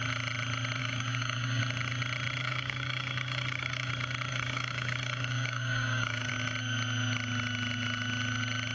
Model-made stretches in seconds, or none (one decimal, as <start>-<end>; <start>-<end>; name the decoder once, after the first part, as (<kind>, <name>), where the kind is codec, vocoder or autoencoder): 0.8-1.6 (codec, DAC); 2.4-3.9; 4.3-6.3